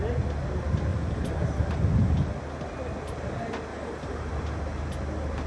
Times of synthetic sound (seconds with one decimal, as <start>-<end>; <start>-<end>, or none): 0.9-2.3; 3.7-4.3